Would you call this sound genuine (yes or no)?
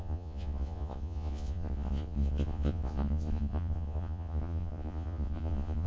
no